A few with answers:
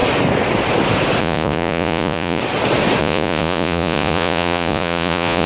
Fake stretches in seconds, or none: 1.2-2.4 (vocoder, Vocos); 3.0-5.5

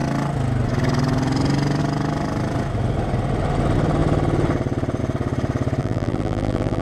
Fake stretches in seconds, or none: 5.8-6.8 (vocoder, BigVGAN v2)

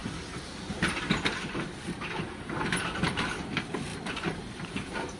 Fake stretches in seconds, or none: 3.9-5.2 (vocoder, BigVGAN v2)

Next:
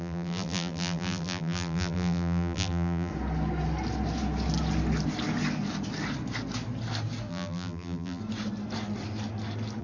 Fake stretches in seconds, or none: 0.0-3.1 (vocoder, BigVGAN v2); 7.3-8.2